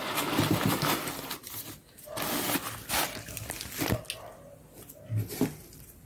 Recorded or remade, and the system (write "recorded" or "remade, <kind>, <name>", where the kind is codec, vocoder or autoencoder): recorded